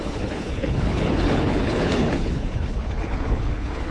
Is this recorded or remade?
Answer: remade